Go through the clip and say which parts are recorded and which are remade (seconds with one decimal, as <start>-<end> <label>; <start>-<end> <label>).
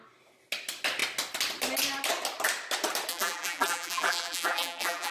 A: 0.0-3.1 recorded; 3.1-5.1 remade